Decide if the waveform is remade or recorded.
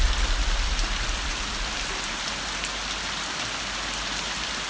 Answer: recorded